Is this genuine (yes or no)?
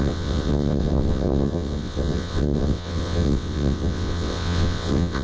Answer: no